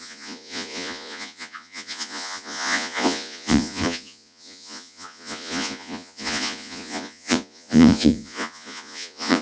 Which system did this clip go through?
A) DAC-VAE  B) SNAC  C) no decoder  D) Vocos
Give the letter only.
D